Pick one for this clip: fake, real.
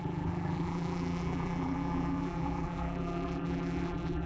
fake